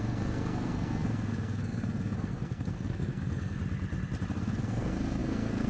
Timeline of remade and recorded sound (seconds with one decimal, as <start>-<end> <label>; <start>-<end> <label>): 0.0-3.6 remade; 3.6-4.4 recorded; 4.4-5.7 remade